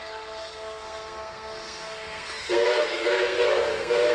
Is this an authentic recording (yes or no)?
no